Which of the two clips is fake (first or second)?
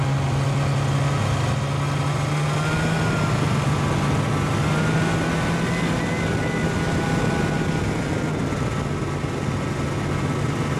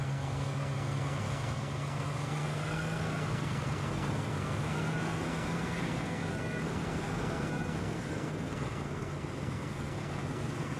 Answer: second